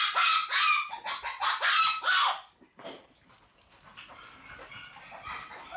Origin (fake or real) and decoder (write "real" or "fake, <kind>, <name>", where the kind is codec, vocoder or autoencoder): real